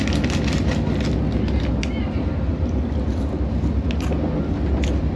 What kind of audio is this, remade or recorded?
recorded